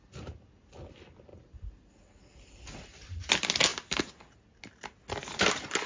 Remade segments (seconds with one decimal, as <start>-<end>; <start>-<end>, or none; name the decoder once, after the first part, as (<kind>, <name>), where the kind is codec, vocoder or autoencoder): none